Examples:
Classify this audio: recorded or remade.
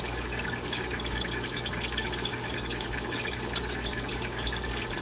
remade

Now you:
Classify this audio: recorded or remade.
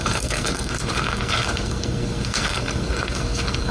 remade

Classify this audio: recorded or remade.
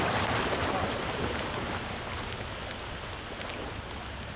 recorded